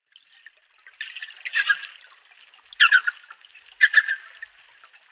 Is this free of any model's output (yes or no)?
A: yes